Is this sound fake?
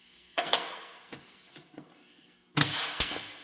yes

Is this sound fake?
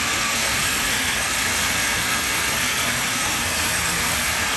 yes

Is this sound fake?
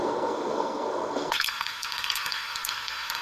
yes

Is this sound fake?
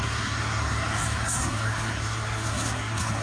yes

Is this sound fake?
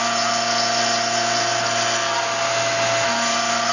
no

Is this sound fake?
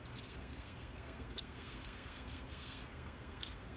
yes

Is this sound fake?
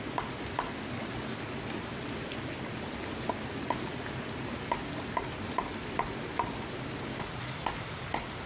no